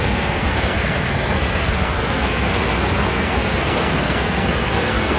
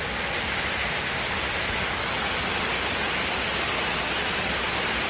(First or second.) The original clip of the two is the second